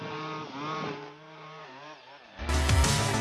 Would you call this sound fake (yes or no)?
no